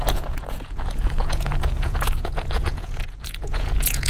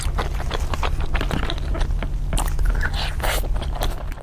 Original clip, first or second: second